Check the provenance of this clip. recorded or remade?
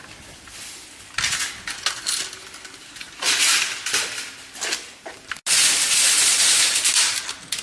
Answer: recorded